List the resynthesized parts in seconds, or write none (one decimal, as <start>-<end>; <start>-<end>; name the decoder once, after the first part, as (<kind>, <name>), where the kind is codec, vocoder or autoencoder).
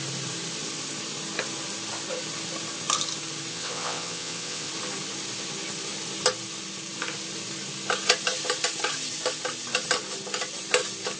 3.5-4.7 (vocoder, WaveNeXt)